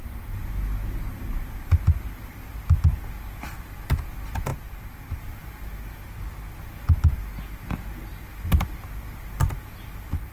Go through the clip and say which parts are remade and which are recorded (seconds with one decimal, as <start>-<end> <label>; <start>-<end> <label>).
0.0-6.0 recorded; 6.0-6.6 remade; 6.6-10.3 recorded

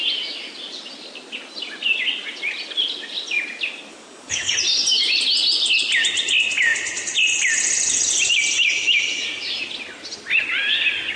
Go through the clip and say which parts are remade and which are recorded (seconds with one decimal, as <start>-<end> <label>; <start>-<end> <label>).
0.0-3.9 recorded; 3.9-4.5 remade; 4.5-11.2 recorded

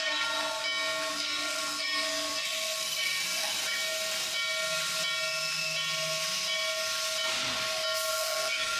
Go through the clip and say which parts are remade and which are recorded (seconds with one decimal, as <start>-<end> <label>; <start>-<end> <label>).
0.0-0.6 remade; 0.6-1.1 recorded; 1.1-3.6 remade; 3.6-8.1 recorded; 8.1-8.8 remade

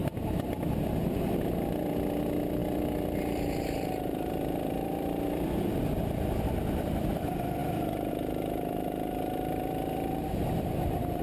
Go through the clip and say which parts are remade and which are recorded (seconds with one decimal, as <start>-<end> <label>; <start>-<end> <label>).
0.0-2.2 recorded; 2.2-11.2 remade

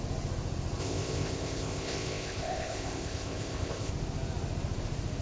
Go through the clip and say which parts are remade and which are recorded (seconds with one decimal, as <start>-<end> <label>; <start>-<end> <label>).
0.0-0.8 recorded; 0.8-3.9 remade; 3.9-5.2 recorded

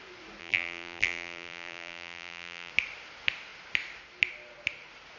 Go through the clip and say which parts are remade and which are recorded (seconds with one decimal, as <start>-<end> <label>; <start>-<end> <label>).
0.0-0.4 recorded; 0.4-2.7 remade; 2.7-5.2 recorded

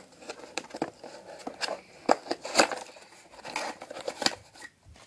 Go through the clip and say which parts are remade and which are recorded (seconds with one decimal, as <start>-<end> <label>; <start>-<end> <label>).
0.0-5.1 recorded

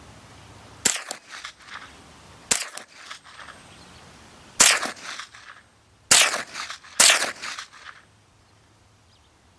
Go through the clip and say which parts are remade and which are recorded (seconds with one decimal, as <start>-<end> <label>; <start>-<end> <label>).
0.0-9.6 recorded